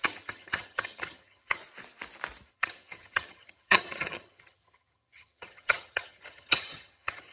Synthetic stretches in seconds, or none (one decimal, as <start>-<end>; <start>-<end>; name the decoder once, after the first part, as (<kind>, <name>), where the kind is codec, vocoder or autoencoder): 0.0-1.6 (vocoder, HiFi-GAN); 2.5-7.3